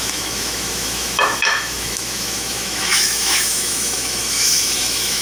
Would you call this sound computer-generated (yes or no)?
yes